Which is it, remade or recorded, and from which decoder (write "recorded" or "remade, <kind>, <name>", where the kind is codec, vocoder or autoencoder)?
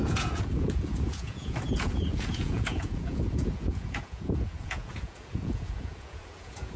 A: remade, vocoder, Vocos